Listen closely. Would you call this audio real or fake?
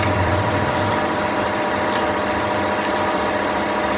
fake